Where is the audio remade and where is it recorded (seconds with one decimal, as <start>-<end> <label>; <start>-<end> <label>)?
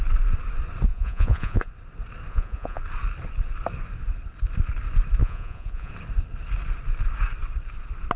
0.0-0.9 recorded; 0.9-1.7 remade; 1.7-2.3 recorded; 2.3-2.8 remade; 2.8-5.2 recorded; 5.2-5.9 remade; 5.9-8.2 recorded